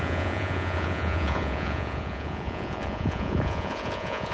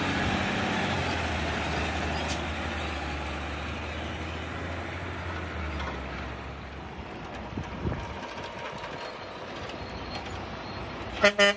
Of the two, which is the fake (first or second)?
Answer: first